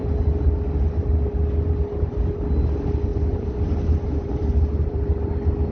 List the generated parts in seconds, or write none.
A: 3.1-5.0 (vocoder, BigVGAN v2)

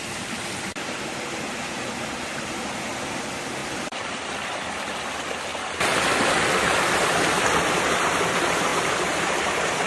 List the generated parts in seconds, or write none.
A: 3.6-4.9 (vocoder, BigVGAN v2); 5.5-7.1; 8.7-9.9

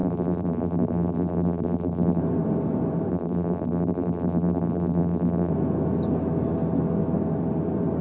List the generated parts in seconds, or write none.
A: 0.0-2.2 (vocoder, BigVGAN v2); 3.1-5.5

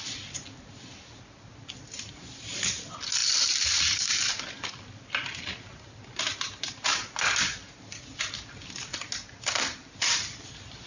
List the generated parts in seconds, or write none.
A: 3.2-4.2 (vocoder, BigVGAN v2)

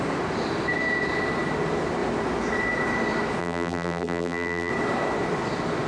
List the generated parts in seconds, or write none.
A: 3.4-4.7 (vocoder, BigVGAN v2)

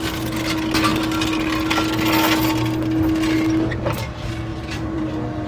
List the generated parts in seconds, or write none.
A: 4.5-5.0 (vocoder, BigVGAN v2)

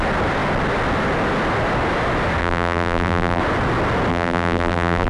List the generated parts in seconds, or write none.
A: 2.4-3.4 (vocoder, BigVGAN v2); 4.1-5.1